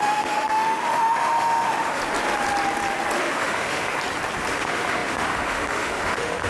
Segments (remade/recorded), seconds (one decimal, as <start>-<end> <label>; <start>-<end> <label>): 0.0-2.0 remade; 2.0-3.2 recorded; 3.2-3.9 remade; 3.9-4.5 recorded; 4.5-6.5 remade